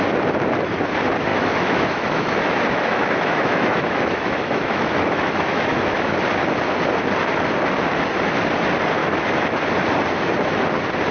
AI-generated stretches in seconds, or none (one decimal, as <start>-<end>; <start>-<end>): 1.3-6.2; 9.0-9.6